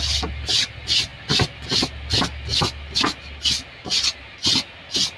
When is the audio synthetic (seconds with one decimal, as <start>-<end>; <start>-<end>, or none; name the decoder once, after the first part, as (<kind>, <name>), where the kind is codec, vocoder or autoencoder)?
none